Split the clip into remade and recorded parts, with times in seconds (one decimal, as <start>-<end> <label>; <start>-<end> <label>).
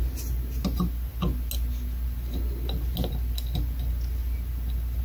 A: 0.0-5.0 recorded